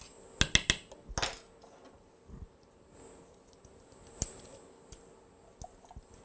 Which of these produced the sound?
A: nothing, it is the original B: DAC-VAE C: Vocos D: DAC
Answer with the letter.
A